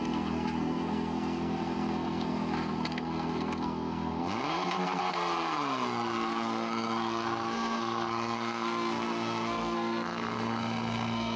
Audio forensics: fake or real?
fake